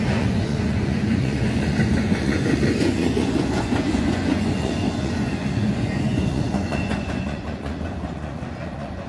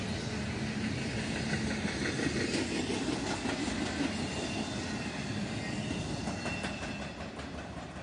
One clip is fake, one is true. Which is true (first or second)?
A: second